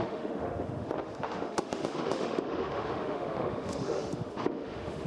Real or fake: fake